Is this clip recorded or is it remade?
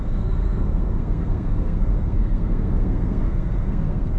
remade